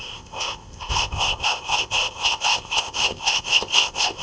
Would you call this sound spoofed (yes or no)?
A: yes